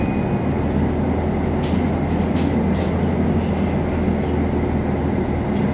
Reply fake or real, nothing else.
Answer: real